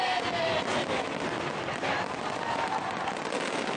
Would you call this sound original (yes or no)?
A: yes